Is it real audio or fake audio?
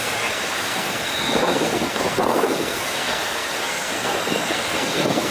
fake